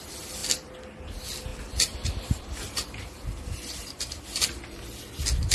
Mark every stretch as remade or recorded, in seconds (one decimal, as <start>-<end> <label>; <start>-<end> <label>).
0.0-1.5 recorded; 1.5-4.8 remade; 4.8-5.5 recorded